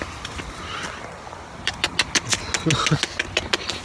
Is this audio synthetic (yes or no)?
no